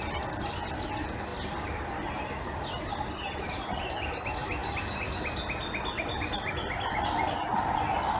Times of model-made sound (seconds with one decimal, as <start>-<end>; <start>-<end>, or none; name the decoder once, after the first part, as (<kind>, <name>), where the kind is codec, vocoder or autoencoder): none